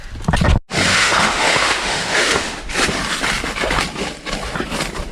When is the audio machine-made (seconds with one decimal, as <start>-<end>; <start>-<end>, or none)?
0.9-2.7